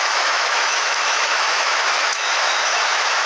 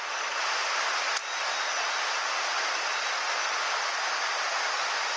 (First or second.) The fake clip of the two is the first